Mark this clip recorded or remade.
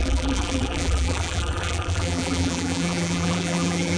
remade